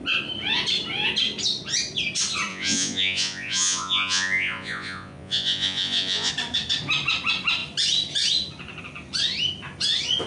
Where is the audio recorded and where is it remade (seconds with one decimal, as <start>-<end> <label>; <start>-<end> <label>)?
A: 0.0-2.5 recorded; 2.5-6.3 remade; 6.3-10.3 recorded